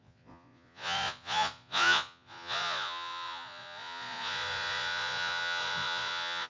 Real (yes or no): no